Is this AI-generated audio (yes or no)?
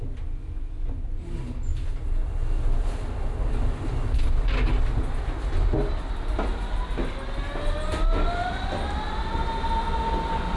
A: no